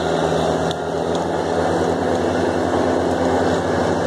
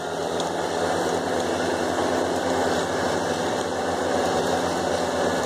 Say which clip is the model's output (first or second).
second